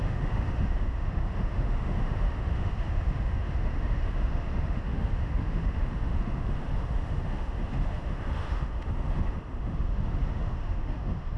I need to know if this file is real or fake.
fake